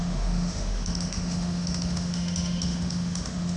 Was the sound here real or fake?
fake